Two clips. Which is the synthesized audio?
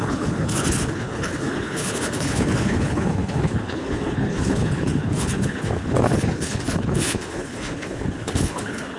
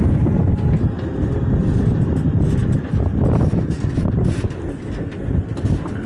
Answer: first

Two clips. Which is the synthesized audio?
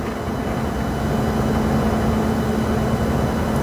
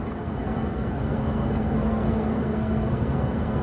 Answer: second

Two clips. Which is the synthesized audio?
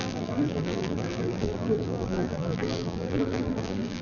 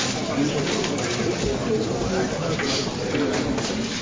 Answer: first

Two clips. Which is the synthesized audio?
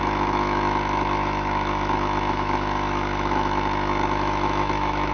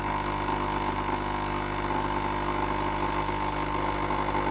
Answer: first